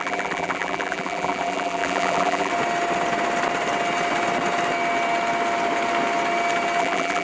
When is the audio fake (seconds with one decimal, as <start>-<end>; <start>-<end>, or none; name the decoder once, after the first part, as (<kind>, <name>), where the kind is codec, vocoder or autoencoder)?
0.0-2.5 (vocoder, BigVGAN v2); 6.8-7.2